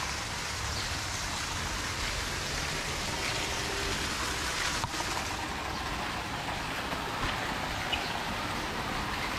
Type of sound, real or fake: real